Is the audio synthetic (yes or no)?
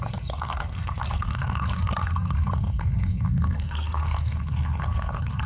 yes